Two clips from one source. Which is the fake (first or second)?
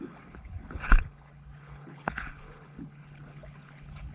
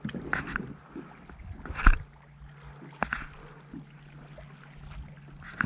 first